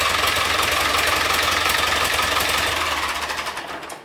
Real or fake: real